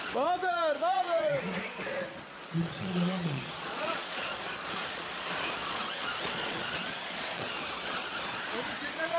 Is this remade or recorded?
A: remade